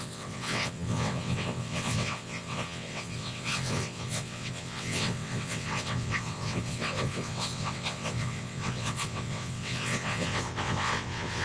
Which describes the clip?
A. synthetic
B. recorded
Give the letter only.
A